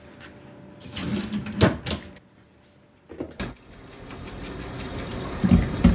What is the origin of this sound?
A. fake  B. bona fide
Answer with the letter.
B